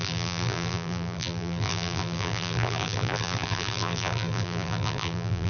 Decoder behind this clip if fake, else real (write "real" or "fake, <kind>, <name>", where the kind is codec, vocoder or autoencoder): fake, vocoder, BigVGAN v2